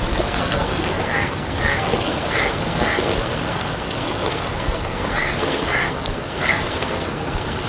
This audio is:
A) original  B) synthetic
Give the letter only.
B